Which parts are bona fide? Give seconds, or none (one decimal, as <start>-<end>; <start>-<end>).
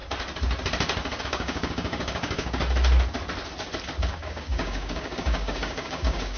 0.0-1.2; 2.6-4.1